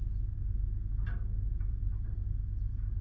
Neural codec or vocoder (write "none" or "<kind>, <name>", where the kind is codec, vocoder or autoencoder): none